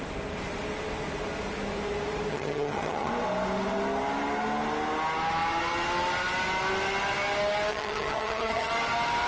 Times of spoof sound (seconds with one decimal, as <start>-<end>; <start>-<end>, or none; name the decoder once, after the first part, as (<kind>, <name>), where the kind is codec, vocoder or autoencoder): 2.3-3.1 (vocoder, HiFi-GAN); 7.7-8.7